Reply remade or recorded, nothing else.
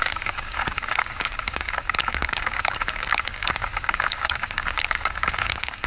remade